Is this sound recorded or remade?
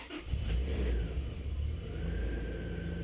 recorded